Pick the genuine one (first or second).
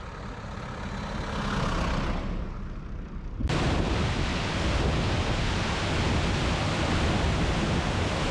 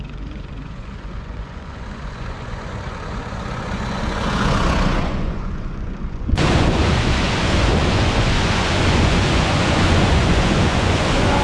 first